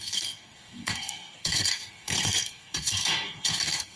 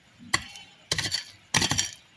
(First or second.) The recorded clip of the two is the second